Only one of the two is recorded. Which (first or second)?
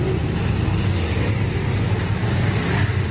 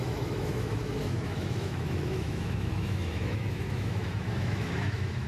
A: first